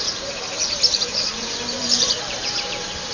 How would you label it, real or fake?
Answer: fake